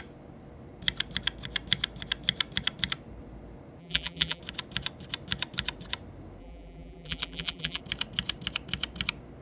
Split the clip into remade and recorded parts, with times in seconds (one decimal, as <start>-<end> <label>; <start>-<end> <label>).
0.0-3.8 recorded; 3.8-4.4 remade; 4.4-6.4 recorded; 6.4-7.8 remade; 7.8-9.4 recorded